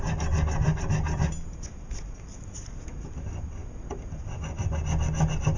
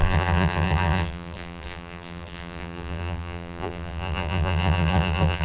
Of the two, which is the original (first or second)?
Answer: first